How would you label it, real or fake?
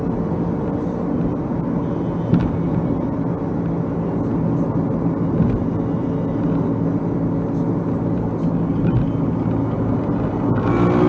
real